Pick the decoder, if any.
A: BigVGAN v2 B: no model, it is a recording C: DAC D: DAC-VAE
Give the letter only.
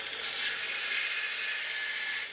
B